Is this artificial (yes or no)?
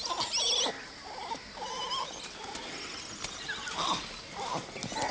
no